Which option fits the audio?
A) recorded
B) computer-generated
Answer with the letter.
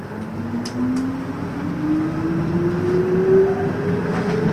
A